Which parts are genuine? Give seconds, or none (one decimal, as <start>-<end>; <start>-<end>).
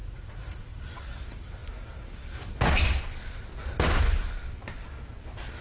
0.8-5.6